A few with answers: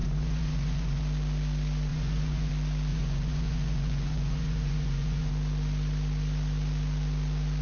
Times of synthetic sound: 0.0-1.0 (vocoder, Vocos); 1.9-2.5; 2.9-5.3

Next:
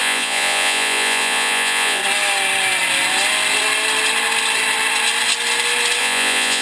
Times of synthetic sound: 0.0-2.0 (vocoder, Vocos); 6.0-6.6

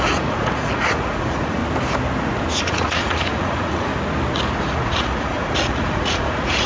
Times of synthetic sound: 0.0-1.6 (vocoder, Vocos); 2.6-3.9; 4.5-6.7

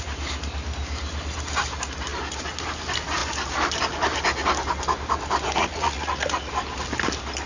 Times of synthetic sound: 5.6-6.5 (vocoder, Vocos)

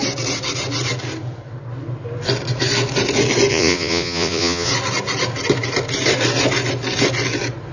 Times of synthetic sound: 3.5-4.7 (vocoder, Vocos)

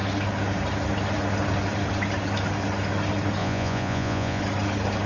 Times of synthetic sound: 3.4-4.4 (vocoder, Vocos)

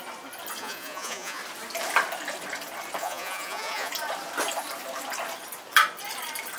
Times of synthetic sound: 0.6-1.4 (vocoder, Vocos); 3.0-3.9

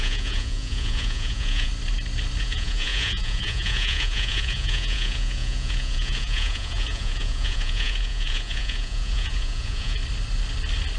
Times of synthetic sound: 0.0-1.7 (vocoder, Vocos); 2.4-10.0